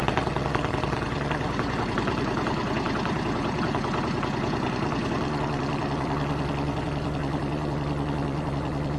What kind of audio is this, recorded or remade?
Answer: remade